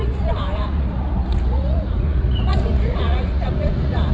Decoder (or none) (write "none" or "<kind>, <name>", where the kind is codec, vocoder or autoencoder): vocoder, Vocos